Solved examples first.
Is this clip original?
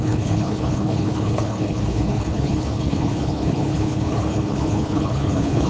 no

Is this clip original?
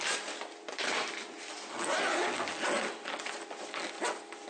yes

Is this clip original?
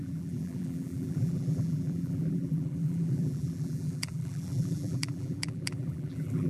no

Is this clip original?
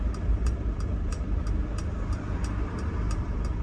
no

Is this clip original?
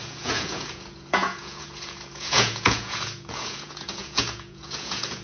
no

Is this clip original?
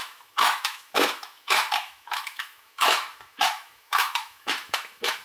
no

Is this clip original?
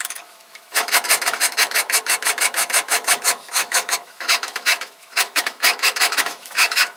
no